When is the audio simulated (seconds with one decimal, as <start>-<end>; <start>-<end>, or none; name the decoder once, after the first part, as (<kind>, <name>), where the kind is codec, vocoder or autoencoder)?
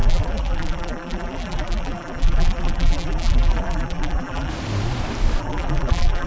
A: 0.0-4.5 (vocoder, BigVGAN v2); 5.4-6.3